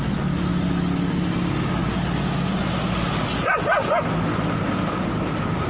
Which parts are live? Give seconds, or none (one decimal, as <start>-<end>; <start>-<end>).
0.0-5.7

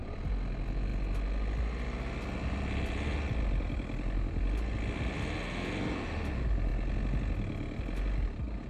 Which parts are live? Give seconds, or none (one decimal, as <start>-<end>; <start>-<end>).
0.0-8.7